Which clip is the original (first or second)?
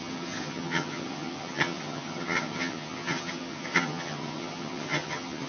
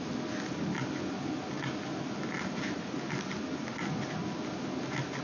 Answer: second